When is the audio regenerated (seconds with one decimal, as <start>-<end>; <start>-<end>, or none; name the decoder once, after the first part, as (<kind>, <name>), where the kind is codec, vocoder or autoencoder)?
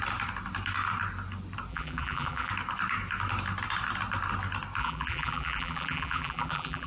1.7-2.5 (vocoder, BigVGAN v2); 4.8-6.9